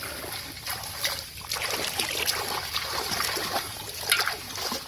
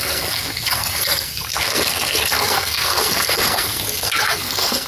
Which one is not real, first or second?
second